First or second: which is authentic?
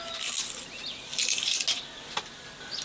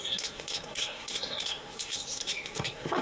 first